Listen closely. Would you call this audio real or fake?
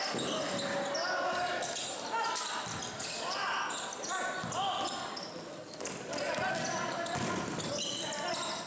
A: real